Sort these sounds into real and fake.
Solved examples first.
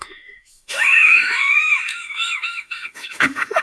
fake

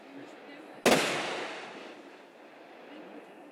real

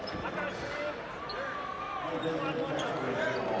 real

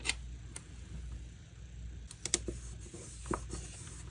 real